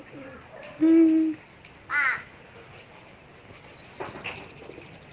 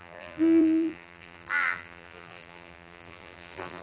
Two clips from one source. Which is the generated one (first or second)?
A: second